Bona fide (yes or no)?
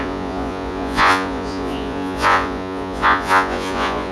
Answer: no